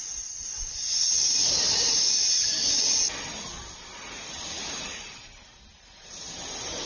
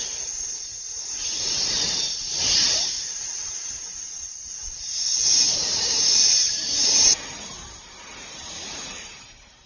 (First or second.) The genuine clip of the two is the first